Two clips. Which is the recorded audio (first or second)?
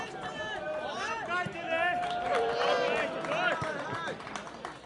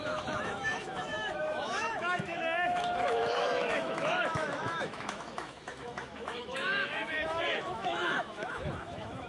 first